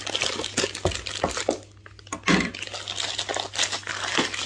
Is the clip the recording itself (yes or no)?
yes